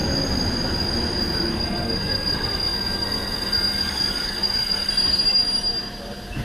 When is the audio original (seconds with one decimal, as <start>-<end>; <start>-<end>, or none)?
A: 0.0-1.5; 4.9-6.4